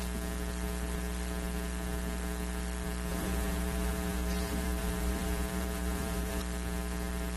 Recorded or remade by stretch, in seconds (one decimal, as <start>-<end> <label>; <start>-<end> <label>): 0.0-3.1 recorded; 3.1-6.4 remade; 6.4-7.4 recorded